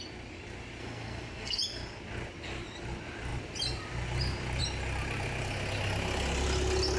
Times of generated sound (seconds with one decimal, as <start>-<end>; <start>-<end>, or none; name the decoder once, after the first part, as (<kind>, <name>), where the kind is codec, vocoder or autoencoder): 0.8-1.6 (codec, SNAC)